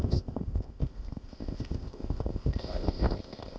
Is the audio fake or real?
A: fake